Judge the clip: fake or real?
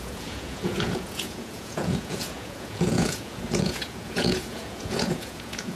fake